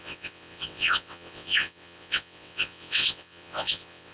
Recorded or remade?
remade